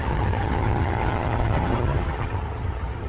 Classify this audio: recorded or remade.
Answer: remade